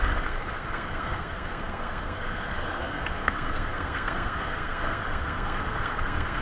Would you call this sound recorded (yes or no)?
no